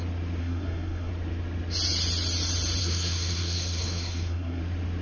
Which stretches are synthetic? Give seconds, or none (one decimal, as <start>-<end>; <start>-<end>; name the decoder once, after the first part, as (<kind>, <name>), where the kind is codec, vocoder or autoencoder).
0.4-1.1 (codec, SNAC); 2.8-4.6